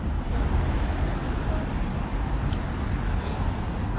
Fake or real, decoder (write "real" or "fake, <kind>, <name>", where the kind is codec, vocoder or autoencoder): real